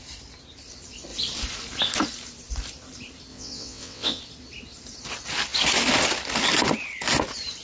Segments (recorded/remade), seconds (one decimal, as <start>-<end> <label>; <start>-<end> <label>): 0.0-3.3 recorded; 3.3-4.2 remade; 4.2-7.6 recorded